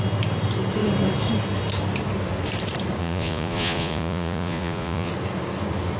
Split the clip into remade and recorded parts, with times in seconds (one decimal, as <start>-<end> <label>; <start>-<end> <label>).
0.0-3.0 recorded; 3.0-5.1 remade; 5.1-6.0 recorded